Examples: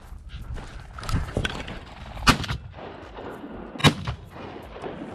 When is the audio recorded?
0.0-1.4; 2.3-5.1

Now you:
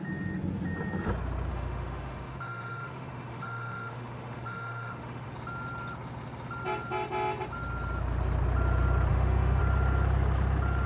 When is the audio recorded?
0.0-1.5; 5.3-9.1; 9.6-10.9